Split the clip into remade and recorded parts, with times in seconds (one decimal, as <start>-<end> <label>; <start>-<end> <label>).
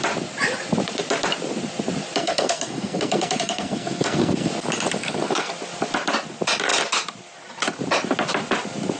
0.0-2.2 recorded; 2.2-4.5 remade; 4.5-5.0 recorded; 5.0-5.5 remade; 5.5-9.0 recorded